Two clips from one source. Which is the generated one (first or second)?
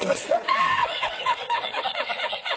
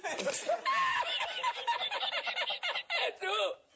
first